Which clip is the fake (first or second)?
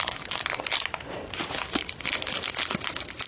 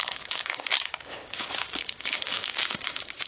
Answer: second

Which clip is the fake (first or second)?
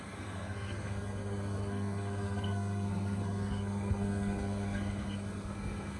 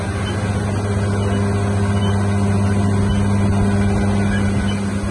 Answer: first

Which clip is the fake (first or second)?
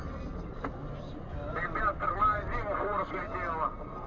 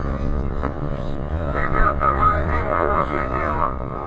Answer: second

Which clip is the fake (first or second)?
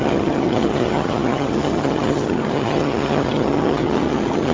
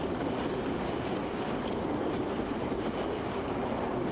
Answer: first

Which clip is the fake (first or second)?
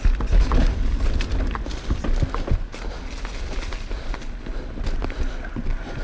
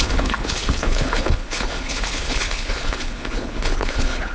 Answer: second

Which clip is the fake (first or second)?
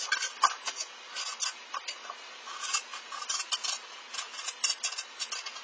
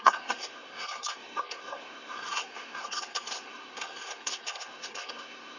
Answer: second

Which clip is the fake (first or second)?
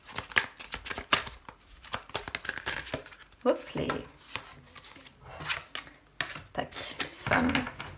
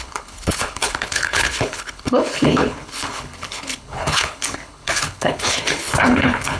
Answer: second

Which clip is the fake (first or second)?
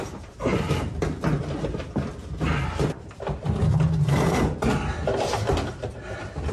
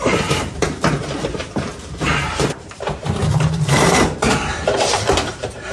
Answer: second